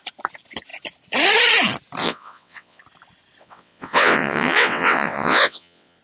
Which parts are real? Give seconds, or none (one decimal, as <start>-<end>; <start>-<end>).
0.0-2.0; 2.8-3.4